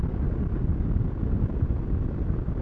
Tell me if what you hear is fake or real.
real